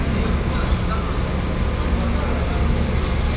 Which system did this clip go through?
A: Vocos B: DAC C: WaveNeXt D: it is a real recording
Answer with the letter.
D